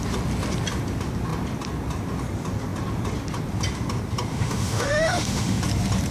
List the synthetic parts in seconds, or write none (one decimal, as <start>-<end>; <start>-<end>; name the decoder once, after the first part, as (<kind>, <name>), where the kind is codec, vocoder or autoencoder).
4.3-5.6 (autoencoder, DAC-VAE)